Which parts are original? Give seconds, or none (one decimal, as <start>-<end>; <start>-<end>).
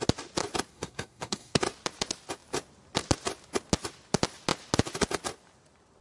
0.0-0.7; 1.6-6.0